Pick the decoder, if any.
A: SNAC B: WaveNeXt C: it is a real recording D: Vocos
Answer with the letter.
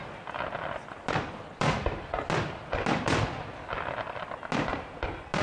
C